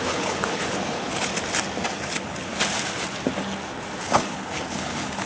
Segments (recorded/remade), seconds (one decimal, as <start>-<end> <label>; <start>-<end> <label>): 0.0-1.3 remade; 1.3-1.9 recorded; 1.9-2.5 remade; 2.5-4.0 recorded; 4.0-5.3 remade